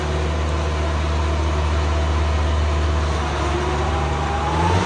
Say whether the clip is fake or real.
real